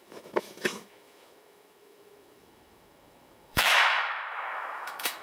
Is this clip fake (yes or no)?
yes